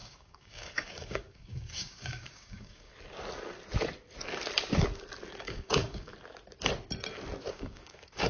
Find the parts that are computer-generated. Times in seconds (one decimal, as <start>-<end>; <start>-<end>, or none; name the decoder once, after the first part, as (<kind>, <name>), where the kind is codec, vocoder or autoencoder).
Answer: 0.0-2.9 (codec, DAC); 5.4-6.1; 7.5-8.3